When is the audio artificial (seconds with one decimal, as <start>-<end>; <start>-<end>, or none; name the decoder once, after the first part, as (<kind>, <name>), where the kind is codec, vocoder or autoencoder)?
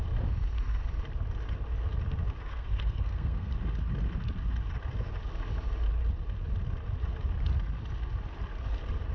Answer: 2.5-3.5 (codec, SNAC)